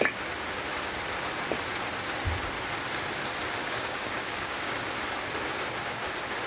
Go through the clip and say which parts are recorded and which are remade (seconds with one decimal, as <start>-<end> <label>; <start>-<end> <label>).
0.0-3.6 recorded; 3.6-4.7 remade; 4.7-6.5 recorded